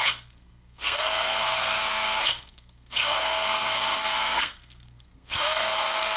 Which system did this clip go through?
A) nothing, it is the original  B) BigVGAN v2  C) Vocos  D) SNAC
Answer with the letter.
D